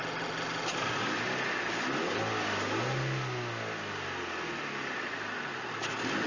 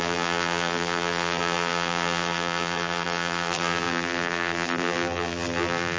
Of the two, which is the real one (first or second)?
first